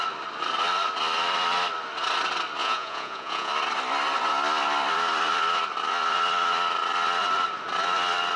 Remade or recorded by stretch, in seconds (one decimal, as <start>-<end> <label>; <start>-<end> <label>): 0.0-2.6 recorded; 2.6-3.5 remade; 3.5-8.4 recorded